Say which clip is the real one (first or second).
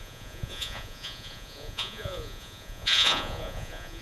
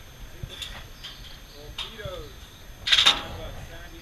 second